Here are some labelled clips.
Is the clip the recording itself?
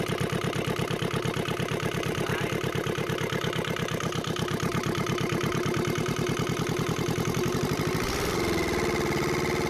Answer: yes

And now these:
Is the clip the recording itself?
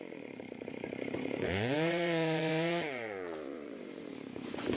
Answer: no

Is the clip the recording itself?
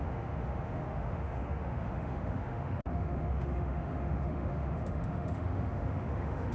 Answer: no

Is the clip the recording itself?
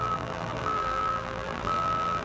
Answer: no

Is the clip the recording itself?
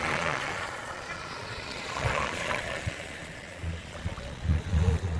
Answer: no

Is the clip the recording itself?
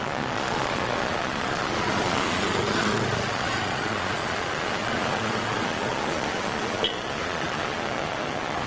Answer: no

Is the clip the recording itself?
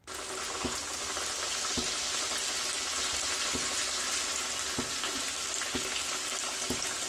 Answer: yes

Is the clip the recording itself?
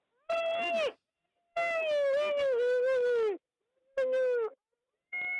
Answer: yes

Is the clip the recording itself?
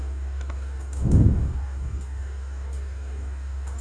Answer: no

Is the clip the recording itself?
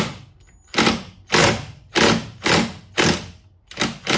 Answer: yes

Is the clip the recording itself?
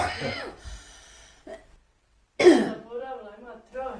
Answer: yes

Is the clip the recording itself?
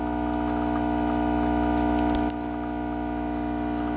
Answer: yes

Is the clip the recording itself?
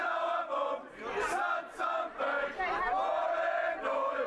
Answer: yes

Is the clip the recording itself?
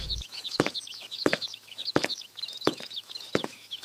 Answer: no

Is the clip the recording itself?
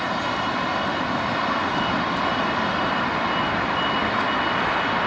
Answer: yes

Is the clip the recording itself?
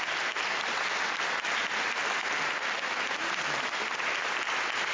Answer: yes